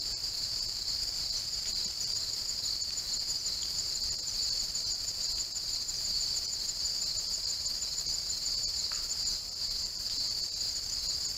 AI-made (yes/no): yes